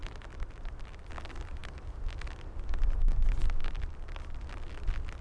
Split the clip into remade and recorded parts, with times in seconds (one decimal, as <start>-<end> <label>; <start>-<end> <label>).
0.0-1.1 remade; 1.1-3.6 recorded; 3.6-4.4 remade; 4.4-5.2 recorded